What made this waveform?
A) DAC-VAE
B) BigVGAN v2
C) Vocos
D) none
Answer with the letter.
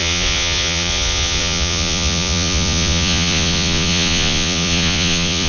C